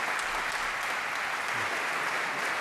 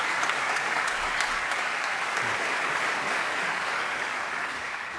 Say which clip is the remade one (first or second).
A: second